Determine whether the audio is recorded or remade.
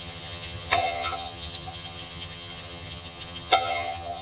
remade